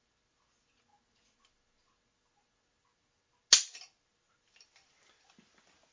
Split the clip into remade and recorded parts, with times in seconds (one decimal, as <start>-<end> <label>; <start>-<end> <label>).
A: 0.0-5.9 recorded